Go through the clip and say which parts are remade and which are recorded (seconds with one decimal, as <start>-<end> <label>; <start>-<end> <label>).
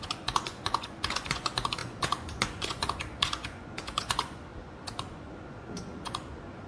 0.0-6.7 remade